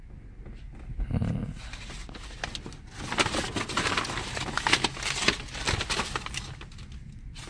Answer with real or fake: real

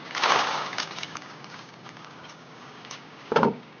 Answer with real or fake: fake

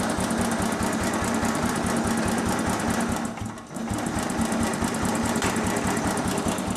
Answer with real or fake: real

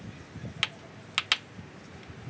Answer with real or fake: real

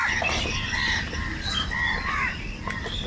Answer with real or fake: real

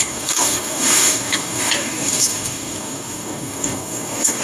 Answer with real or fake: fake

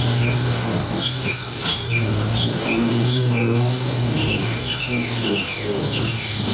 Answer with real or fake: fake